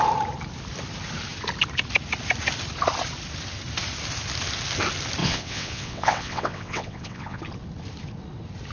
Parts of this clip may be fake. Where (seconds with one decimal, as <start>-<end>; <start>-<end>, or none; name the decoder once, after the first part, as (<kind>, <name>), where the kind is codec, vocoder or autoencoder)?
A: 5.2-7.4 (vocoder, WaveNeXt)